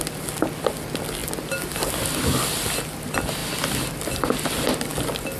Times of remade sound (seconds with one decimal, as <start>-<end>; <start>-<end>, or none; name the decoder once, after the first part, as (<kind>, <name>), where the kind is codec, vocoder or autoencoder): none